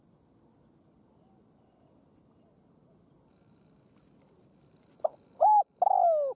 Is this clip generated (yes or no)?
no